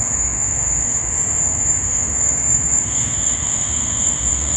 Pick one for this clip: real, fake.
fake